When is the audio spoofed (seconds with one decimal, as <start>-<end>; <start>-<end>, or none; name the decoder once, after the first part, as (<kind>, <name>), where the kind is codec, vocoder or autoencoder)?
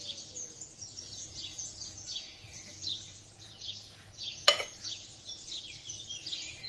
0.0-5.6 (vocoder, Vocos); 6.2-6.7